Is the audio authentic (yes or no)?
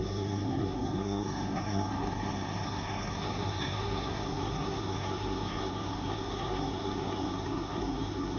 no